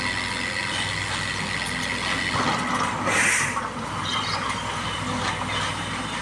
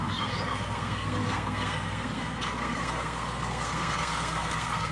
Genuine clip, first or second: first